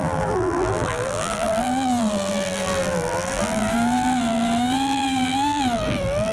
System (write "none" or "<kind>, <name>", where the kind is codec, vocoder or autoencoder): vocoder, BigVGAN v2